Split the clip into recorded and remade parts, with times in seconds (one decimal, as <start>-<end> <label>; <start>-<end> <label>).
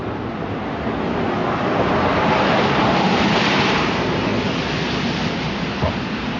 0.0-1.4 remade; 1.4-2.0 recorded; 2.0-4.3 remade; 4.3-5.4 recorded; 5.4-6.4 remade